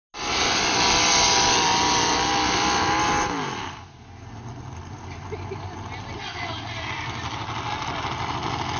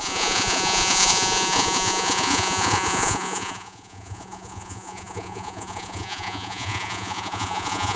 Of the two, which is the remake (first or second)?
second